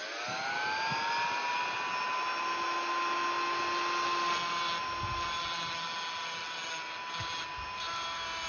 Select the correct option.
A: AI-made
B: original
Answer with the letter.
B